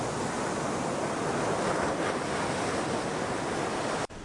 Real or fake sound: real